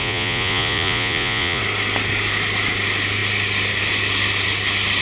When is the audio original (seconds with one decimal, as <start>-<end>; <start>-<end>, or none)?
1.6-5.0